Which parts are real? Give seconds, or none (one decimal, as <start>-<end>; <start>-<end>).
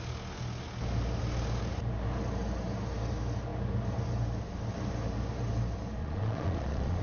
0.0-6.0